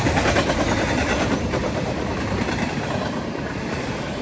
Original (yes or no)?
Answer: yes